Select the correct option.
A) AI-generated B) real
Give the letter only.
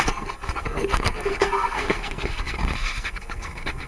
A